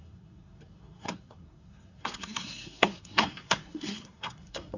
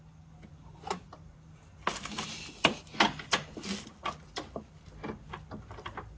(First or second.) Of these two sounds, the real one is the second